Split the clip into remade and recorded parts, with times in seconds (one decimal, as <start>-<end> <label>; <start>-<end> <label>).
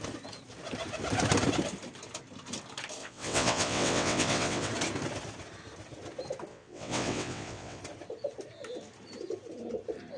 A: 0.0-3.0 recorded; 3.0-4.7 remade; 4.7-6.5 recorded; 6.5-7.8 remade; 7.8-10.2 recorded